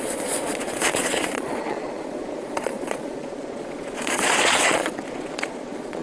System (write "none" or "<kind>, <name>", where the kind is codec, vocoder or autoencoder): vocoder, Vocos